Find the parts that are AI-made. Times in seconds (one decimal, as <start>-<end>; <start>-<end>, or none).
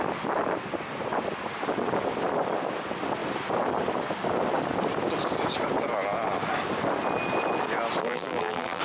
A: 8.0-8.8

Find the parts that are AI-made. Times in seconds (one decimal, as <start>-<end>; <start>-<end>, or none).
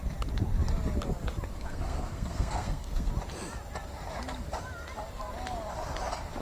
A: 1.5-3.1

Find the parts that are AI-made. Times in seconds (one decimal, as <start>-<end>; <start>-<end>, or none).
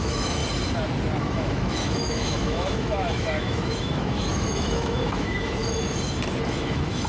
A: 0.0-0.4; 1.2-5.6; 6.4-7.1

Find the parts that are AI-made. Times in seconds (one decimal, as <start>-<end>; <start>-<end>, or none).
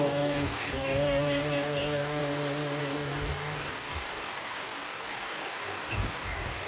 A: 0.0-2.2; 2.8-6.7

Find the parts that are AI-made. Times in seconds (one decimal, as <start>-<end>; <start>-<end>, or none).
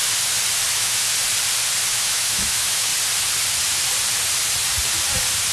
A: 0.7-1.1; 1.9-2.9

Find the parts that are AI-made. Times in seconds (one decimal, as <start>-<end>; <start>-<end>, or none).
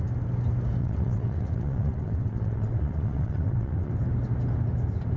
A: 0.8-3.9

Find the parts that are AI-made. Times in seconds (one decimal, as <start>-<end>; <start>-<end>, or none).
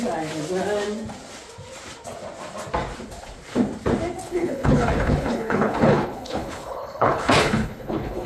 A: 4.2-8.3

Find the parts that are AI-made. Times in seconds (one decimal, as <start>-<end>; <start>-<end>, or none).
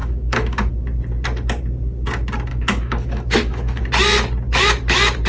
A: 0.0-0.7; 2.5-3.8